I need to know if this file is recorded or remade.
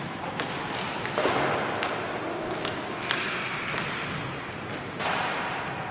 recorded